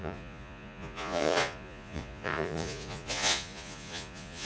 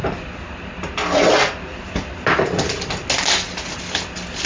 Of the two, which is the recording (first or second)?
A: second